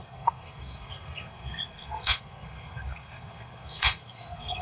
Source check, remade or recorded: remade